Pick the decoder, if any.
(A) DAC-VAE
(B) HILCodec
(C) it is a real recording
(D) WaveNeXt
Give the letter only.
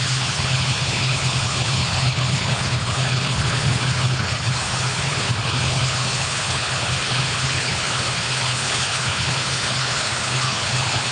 B